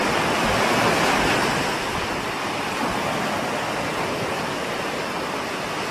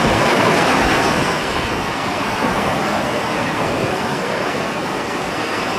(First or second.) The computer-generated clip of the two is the second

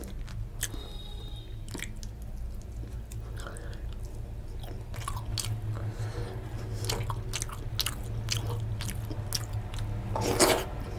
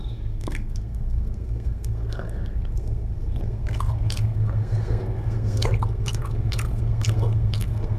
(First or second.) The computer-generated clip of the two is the second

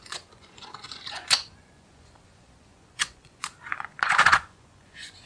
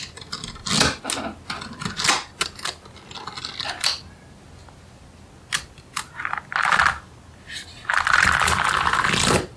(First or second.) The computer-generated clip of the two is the first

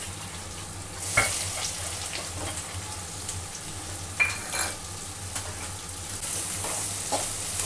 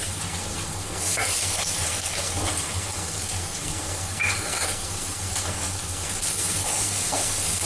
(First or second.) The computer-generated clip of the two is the second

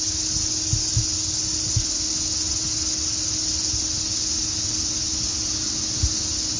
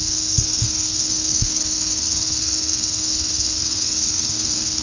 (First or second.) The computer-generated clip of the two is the second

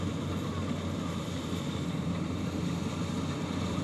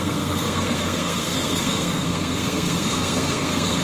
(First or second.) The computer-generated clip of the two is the second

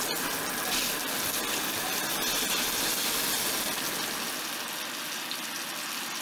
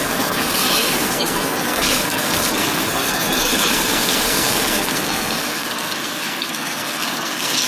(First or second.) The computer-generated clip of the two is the second